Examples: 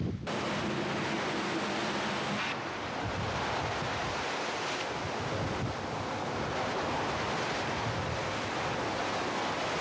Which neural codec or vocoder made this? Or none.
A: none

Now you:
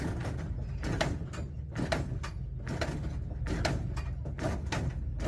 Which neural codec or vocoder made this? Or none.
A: none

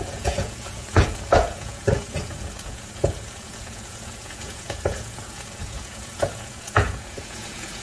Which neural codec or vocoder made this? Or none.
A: vocoder, Vocos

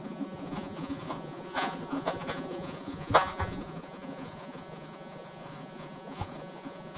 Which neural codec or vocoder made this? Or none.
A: vocoder, Vocos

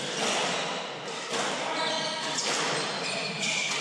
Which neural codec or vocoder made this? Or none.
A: none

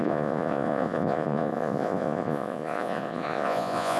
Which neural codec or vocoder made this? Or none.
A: vocoder, Vocos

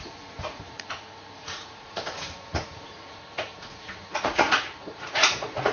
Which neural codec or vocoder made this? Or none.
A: vocoder, Vocos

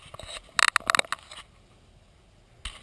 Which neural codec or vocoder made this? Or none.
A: none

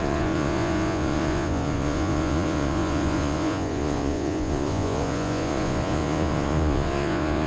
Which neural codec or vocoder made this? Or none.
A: vocoder, Vocos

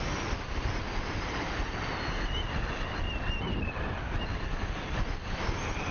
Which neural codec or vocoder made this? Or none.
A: none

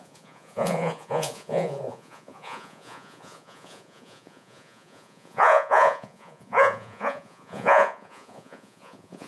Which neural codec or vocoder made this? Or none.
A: vocoder, Vocos